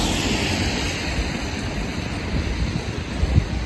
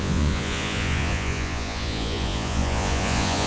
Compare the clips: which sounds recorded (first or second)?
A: first